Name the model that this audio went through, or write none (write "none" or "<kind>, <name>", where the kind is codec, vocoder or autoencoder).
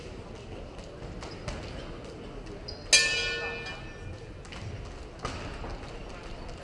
none